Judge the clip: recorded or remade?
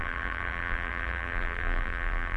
remade